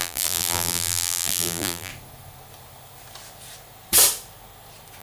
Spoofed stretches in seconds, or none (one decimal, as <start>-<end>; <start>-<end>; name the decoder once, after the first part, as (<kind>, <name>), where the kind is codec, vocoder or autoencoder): 0.0-1.9 (vocoder, BigVGAN v2)